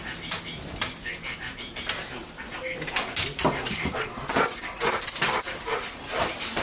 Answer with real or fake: real